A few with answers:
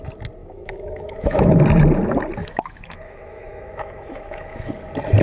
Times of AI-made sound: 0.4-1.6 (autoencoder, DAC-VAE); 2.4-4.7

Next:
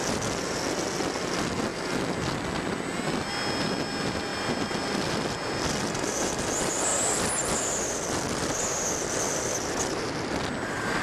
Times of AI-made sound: none

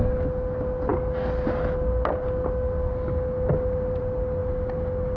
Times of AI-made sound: none

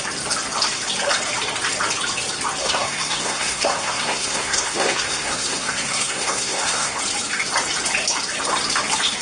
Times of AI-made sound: 2.6-7.0 (codec, SNAC)